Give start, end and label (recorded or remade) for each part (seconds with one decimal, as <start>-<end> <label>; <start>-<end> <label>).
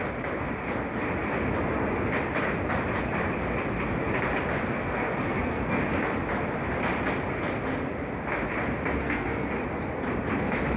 0.0-4.7 recorded; 4.7-5.8 remade; 5.8-8.9 recorded; 8.9-9.5 remade; 9.5-10.8 recorded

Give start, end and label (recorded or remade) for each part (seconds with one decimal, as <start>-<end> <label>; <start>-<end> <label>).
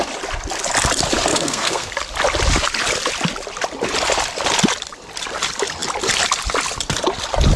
0.0-1.3 recorded; 1.3-1.9 remade; 1.9-7.6 recorded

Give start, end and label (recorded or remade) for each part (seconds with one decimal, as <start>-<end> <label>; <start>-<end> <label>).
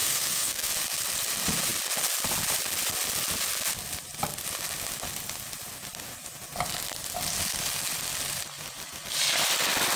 0.0-0.7 remade; 0.7-10.0 recorded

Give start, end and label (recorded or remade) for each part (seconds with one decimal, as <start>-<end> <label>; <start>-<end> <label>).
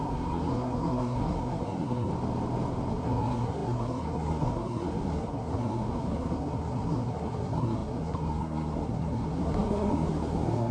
0.0-2.1 remade; 2.1-2.9 recorded; 2.9-10.7 remade